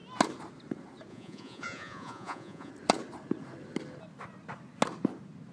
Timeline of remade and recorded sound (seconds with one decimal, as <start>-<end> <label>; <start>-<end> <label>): 0.0-1.1 recorded; 1.1-2.7 remade; 2.7-5.5 recorded